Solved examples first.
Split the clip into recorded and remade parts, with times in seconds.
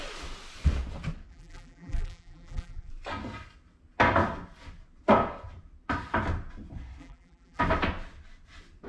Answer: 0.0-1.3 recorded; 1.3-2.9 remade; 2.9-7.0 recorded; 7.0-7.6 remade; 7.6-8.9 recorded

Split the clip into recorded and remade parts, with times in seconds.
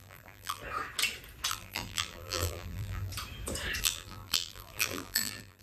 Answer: 0.0-0.6 remade; 0.6-1.5 recorded; 1.5-3.1 remade; 3.1-3.8 recorded; 3.8-5.6 remade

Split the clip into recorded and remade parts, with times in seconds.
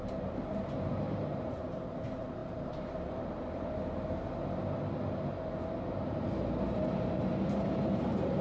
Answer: 0.0-4.4 remade; 4.4-6.1 recorded; 6.1-8.4 remade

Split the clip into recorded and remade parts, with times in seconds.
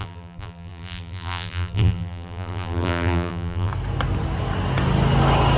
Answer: 0.0-3.7 remade; 3.7-5.6 recorded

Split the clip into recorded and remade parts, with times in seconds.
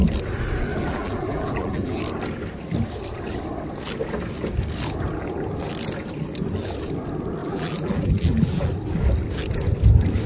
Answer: 0.0-0.8 recorded; 0.8-2.0 remade; 2.0-7.4 recorded; 7.4-8.7 remade; 8.7-10.3 recorded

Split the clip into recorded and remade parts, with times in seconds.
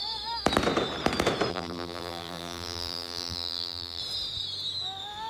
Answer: 0.0-1.5 recorded; 1.5-4.0 remade; 4.0-5.3 recorded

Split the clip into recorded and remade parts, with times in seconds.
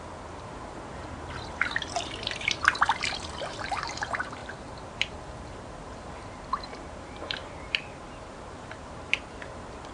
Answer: 0.0-7.4 remade; 7.4-8.2 recorded; 8.2-9.9 remade